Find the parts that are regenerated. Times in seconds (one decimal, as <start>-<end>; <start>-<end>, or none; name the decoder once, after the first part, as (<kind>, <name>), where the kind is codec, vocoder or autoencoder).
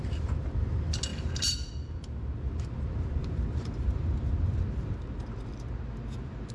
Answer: 1.1-1.7 (vocoder, BigVGAN v2); 3.2-6.5